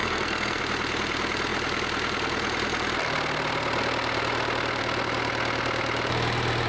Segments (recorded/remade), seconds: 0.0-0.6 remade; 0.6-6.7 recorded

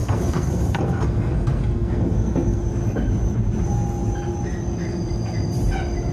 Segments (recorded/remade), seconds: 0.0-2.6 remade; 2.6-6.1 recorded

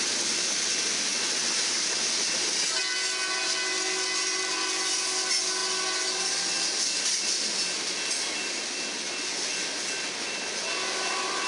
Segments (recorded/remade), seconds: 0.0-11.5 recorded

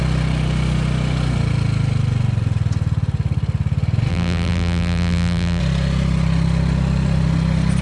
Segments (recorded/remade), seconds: 0.0-4.1 recorded; 4.1-5.6 remade; 5.6-7.8 recorded